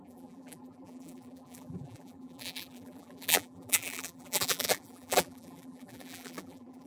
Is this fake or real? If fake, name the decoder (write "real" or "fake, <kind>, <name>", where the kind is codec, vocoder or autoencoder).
fake, vocoder, BigVGAN v2